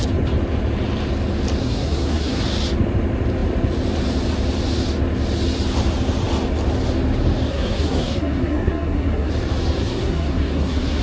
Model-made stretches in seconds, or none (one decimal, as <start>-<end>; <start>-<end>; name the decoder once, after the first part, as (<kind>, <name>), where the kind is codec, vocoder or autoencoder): 1.6-2.4 (codec, SNAC); 7.5-9.3; 9.8-11.0